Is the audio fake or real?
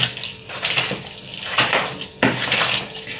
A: real